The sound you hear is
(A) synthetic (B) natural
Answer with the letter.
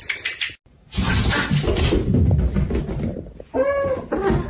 B